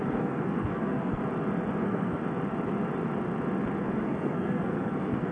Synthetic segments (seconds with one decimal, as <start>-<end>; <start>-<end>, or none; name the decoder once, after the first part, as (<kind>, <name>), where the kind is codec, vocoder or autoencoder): 0.0-1.2 (codec, SNAC); 1.8-2.2; 3.8-5.3